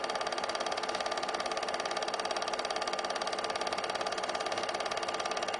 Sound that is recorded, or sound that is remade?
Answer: recorded